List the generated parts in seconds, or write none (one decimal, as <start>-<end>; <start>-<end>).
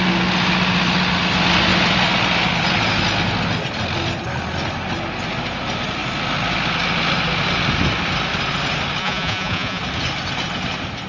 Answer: 9.0-9.8